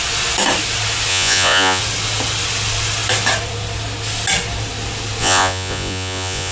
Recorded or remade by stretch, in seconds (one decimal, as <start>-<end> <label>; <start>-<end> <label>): 0.0-1.1 recorded; 1.1-1.8 remade; 1.8-5.2 recorded; 5.2-6.5 remade